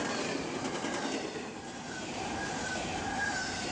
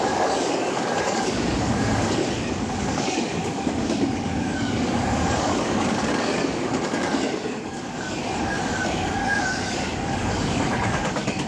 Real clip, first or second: first